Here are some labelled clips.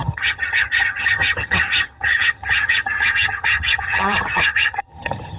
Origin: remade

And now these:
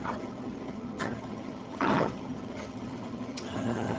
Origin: remade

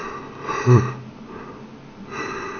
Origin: recorded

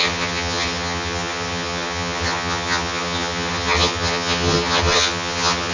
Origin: remade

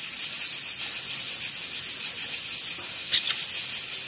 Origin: recorded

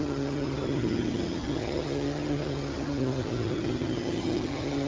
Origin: remade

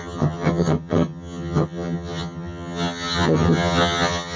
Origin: remade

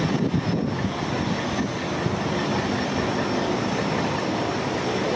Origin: recorded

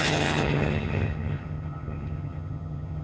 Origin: remade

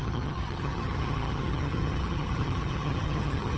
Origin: remade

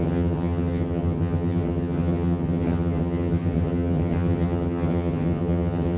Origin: remade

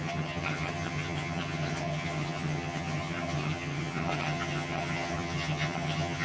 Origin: remade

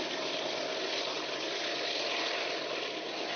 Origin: recorded